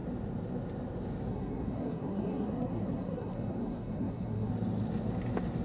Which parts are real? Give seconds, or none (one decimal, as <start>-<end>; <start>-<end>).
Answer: 0.0-1.3; 4.5-5.6